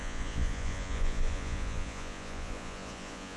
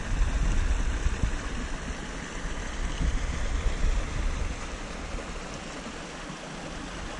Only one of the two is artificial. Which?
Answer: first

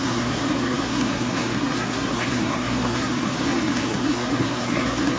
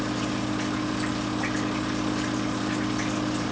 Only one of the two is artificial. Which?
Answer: first